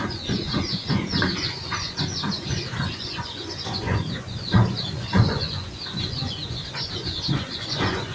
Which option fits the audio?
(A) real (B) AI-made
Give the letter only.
B